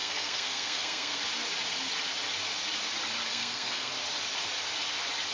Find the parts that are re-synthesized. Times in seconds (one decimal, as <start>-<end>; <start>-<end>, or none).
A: 0.0-1.2; 3.3-3.9